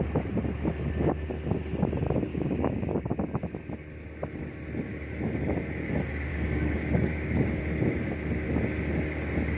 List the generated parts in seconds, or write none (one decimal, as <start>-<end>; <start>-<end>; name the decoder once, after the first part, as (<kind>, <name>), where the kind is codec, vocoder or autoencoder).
2.3-3.1 (codec, DAC); 6.3-7.6